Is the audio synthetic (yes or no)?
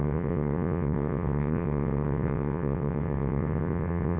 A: yes